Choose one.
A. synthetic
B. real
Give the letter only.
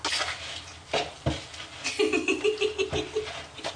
B